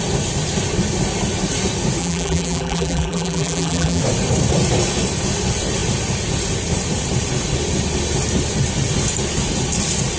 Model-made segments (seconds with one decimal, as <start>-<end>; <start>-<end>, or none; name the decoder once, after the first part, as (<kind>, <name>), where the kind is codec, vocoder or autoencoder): 2.0-4.0 (vocoder, BigVGAN v2)